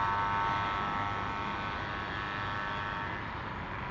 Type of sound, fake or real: real